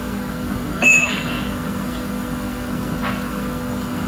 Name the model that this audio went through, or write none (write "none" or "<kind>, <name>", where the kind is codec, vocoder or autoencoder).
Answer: codec, SNAC